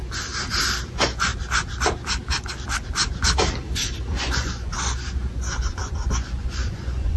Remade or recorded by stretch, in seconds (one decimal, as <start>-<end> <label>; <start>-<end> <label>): 0.0-0.9 recorded; 0.9-1.3 remade; 1.3-4.1 recorded; 4.1-4.7 remade; 4.7-5.3 recorded; 5.3-7.2 remade